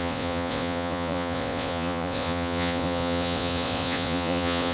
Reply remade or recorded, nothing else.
remade